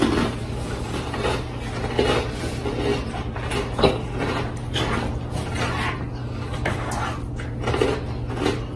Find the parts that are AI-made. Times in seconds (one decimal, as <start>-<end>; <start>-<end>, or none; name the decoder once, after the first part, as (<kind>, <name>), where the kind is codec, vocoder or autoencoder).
0.4-1.0 (codec, DAC); 6.2-6.9

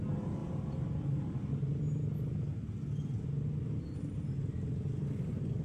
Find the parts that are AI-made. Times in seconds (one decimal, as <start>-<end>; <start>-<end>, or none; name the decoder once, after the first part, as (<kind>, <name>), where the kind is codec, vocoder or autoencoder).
none

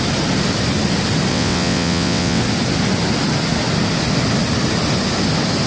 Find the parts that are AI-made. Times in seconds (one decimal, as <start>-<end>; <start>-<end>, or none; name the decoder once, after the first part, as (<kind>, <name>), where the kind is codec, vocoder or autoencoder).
1.3-2.4 (vocoder, WaveNeXt)